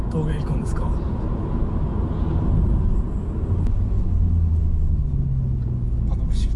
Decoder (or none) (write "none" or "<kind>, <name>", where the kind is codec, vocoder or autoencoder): none